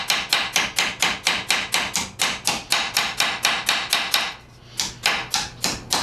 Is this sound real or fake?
real